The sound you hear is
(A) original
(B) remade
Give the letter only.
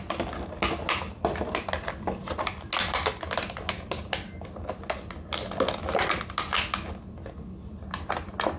A